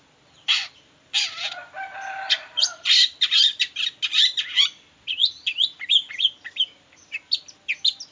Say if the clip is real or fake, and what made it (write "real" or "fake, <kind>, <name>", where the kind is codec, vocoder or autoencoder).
real